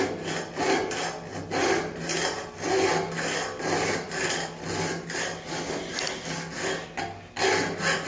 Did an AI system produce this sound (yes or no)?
no